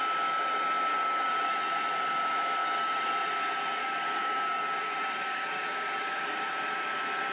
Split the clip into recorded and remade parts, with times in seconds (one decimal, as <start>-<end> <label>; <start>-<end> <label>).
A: 0.0-0.9 recorded; 0.9-1.6 remade; 1.6-2.6 recorded; 2.6-3.1 remade; 3.1-3.8 recorded; 3.8-6.5 remade; 6.5-7.3 recorded